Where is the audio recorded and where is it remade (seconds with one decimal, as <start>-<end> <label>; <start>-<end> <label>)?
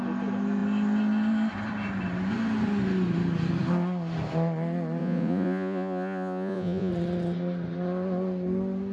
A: 0.0-5.0 recorded; 5.0-6.9 remade; 6.9-8.9 recorded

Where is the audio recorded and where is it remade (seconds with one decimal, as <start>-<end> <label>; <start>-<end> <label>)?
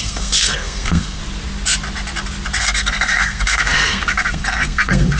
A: 0.0-1.2 remade; 1.2-2.6 recorded; 2.6-5.2 remade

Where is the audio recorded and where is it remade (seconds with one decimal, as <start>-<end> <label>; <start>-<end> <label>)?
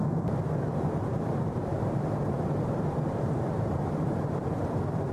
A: 0.0-1.7 recorded; 1.7-5.1 remade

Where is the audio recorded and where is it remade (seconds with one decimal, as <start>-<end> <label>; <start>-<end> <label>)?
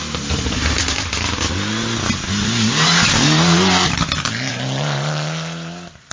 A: 0.0-0.8 remade; 0.8-4.5 recorded; 4.5-6.1 remade